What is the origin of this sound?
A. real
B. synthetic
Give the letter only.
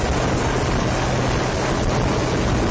A